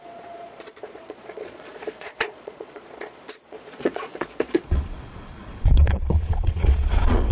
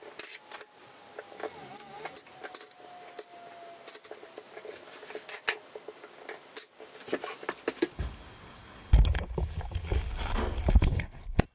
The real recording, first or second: second